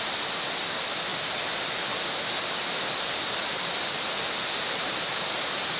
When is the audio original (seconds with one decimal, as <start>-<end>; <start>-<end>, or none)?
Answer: 0.0-5.8